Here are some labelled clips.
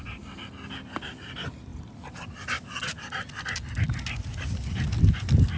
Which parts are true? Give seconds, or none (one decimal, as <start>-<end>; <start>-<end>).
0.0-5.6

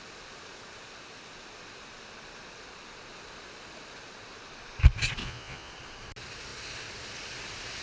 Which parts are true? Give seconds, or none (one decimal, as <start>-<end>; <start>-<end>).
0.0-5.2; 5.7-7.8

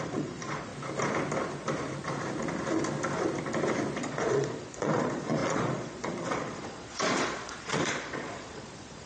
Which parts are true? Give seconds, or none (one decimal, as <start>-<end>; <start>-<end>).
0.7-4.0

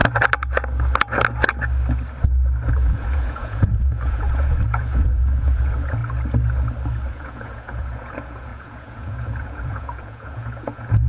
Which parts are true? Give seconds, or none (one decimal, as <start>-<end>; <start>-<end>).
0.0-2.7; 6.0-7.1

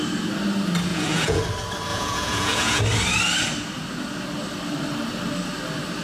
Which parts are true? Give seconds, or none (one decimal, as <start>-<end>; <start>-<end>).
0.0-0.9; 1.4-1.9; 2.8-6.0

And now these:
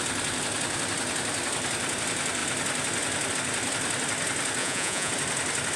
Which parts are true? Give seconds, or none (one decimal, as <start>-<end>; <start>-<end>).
0.0-4.6; 5.1-5.8